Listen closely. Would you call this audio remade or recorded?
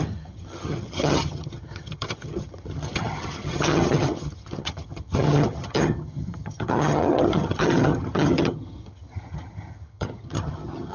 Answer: remade